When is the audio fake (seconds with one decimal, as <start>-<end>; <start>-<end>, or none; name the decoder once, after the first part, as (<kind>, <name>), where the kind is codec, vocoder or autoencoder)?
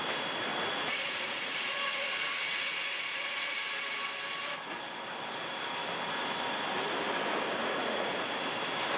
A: 0.5-3.6 (vocoder, Vocos); 7.6-8.3